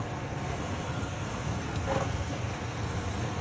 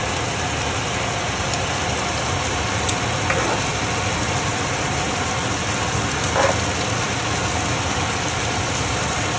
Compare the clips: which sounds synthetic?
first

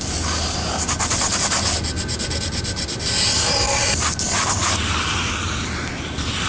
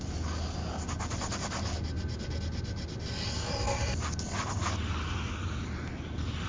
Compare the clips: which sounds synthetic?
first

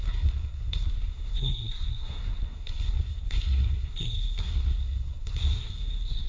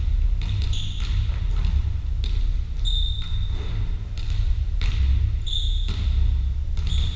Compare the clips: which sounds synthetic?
first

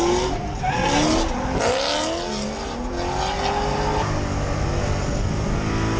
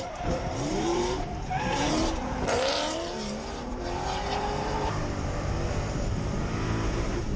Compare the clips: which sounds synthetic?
second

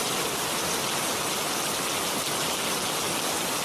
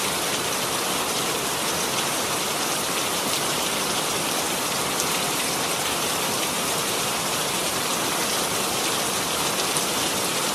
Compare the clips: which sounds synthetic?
second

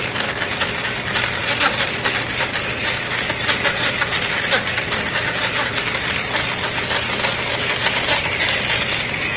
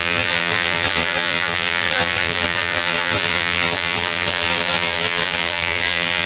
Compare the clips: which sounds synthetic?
second